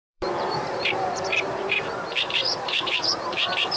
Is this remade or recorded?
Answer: remade